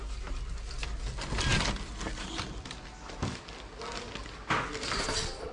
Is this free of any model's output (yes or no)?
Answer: yes